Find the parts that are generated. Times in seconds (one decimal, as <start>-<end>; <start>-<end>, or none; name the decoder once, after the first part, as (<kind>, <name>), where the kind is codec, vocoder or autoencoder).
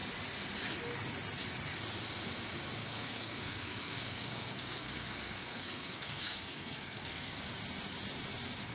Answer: 2.8-7.4 (codec, SNAC)